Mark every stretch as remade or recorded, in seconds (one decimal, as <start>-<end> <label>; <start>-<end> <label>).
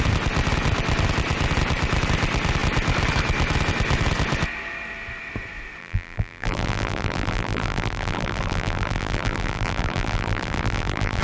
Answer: 0.0-5.8 recorded; 5.8-11.2 remade